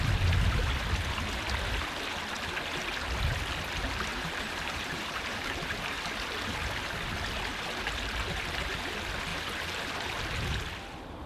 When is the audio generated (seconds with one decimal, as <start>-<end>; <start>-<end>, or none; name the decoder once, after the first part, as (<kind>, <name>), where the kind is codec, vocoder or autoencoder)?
4.1-6.0 (vocoder, BigVGAN v2); 9.3-9.9